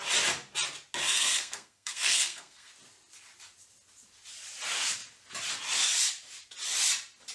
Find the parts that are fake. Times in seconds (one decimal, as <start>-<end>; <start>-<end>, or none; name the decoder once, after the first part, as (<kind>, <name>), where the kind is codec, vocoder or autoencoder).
1.0-2.7 (codec, SNAC)

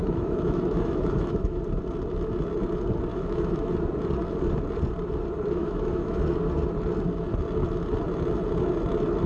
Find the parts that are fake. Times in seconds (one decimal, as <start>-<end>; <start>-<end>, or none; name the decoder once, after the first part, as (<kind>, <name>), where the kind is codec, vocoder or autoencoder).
0.0-1.6 (autoencoder, DAC-VAE); 3.1-3.7; 5.6-6.2

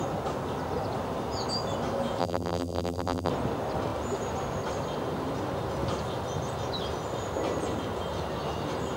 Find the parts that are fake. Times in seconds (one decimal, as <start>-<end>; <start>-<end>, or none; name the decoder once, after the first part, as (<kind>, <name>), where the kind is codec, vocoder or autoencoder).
2.2-3.3 (vocoder, BigVGAN v2)

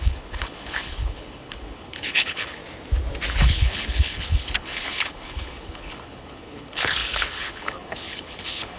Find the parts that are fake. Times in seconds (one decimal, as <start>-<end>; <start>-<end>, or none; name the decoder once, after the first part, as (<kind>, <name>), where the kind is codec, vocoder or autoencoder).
0.0-2.6 (codec, HILCodec); 3.3-8.8

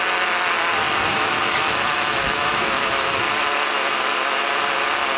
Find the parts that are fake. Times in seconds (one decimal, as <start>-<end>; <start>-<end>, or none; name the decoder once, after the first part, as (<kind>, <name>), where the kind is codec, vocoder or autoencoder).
1.1-3.2 (autoencoder, DAC-VAE)

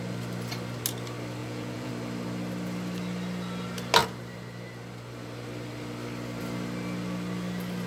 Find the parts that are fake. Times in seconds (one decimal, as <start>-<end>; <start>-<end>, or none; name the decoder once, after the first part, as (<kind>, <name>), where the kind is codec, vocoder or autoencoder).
1.4-1.9 (vocoder, Vocos)

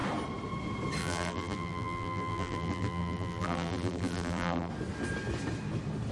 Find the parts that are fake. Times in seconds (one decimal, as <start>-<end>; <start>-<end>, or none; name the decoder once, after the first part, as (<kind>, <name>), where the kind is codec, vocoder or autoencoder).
1.0-4.7 (vocoder, BigVGAN v2)